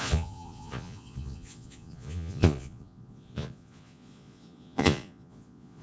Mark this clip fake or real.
fake